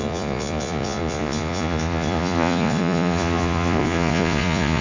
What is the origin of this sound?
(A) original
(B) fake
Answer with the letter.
B